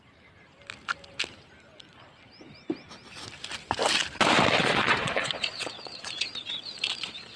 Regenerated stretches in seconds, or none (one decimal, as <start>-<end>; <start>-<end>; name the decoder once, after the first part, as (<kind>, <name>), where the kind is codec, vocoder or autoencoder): 4.6-7.4 (vocoder, Vocos)